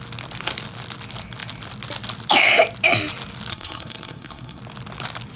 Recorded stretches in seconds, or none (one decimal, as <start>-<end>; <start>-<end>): 0.0-3.5; 4.6-5.4